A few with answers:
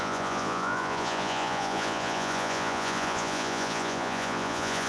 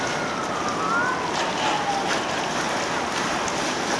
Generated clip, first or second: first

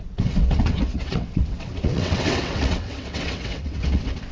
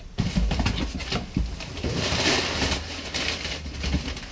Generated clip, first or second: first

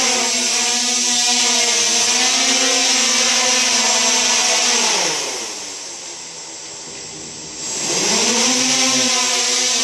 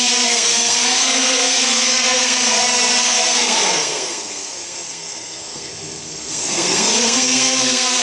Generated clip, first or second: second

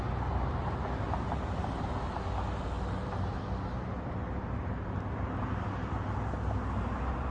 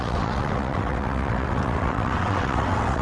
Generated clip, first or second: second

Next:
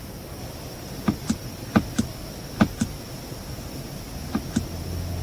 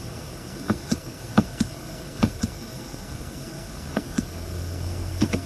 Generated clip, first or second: second